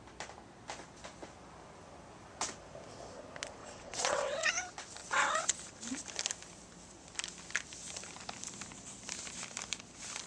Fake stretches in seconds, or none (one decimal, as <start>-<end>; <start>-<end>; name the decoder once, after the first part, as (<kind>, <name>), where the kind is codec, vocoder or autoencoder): 3.6-4.5 (vocoder, WaveNeXt); 5.0-5.5